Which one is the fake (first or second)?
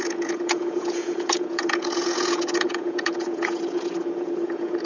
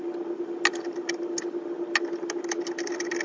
first